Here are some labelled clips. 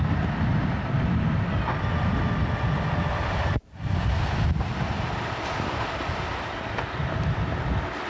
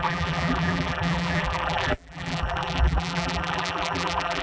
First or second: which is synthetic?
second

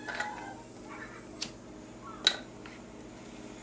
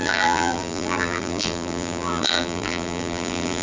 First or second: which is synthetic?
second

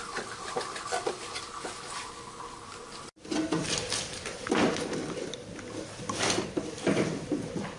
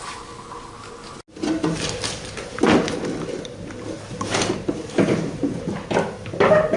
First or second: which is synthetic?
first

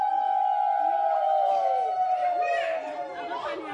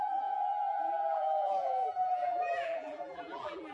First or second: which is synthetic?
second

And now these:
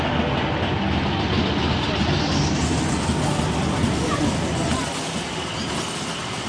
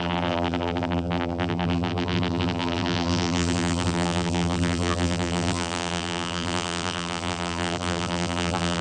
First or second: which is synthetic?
second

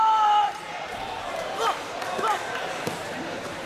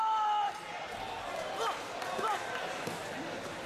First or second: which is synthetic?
first